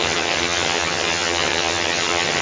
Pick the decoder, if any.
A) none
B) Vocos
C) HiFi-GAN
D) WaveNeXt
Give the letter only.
C